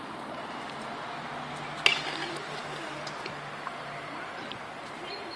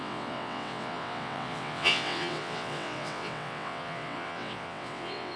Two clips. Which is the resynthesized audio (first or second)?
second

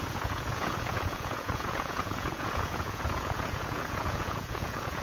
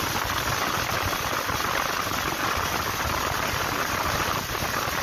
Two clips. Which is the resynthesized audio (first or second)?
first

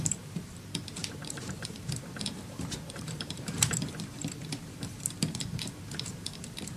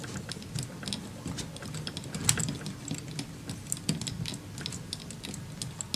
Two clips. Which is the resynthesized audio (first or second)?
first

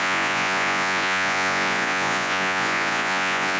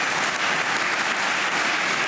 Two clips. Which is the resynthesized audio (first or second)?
first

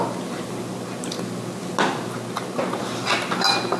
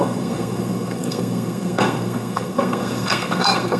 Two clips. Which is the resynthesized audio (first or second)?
second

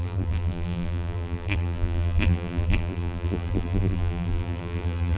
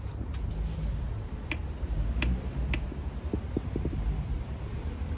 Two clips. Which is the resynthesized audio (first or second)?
first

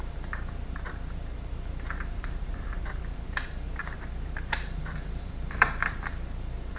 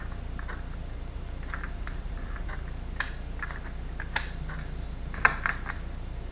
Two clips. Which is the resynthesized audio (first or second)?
first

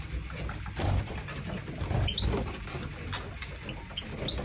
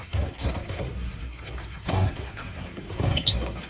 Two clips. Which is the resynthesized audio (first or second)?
second